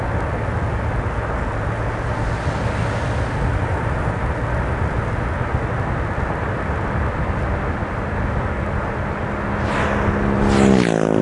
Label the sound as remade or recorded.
recorded